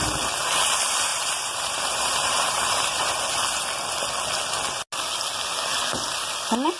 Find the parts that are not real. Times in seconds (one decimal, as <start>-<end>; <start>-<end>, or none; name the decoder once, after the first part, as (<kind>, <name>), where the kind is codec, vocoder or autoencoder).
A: 1.1-3.2 (vocoder, BigVGAN v2)